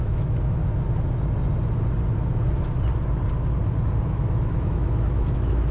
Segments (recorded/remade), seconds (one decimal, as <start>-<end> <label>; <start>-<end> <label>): 0.0-0.6 remade; 0.6-4.0 recorded; 4.0-5.7 remade